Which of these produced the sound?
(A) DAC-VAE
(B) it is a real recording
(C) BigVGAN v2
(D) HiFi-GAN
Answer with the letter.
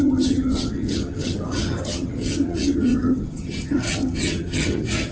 D